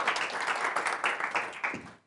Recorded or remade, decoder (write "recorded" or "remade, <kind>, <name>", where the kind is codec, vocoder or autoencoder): recorded